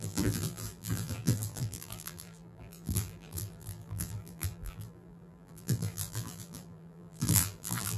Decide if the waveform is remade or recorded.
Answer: remade